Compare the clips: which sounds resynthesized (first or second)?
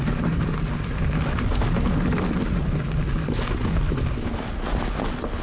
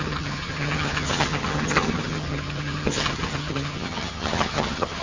second